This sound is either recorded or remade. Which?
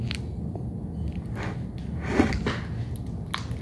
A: recorded